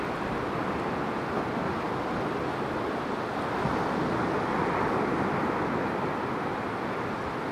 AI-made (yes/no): no